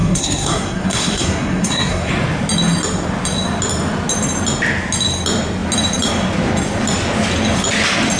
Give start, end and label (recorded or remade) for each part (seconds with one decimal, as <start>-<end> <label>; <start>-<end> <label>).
0.0-2.1 remade; 2.1-8.2 recorded